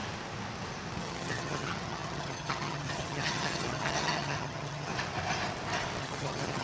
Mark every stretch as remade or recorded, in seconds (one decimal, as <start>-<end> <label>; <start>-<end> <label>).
0.0-1.0 recorded; 1.0-4.9 remade; 4.9-6.0 recorded; 6.0-6.6 remade